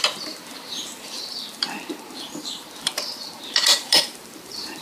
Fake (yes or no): yes